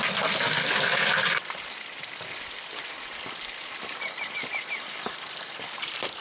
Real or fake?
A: fake